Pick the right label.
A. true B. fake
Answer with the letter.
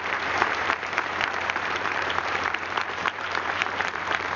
B